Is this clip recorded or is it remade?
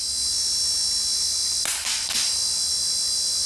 recorded